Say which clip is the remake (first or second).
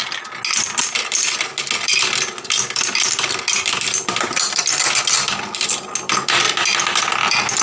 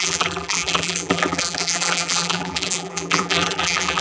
second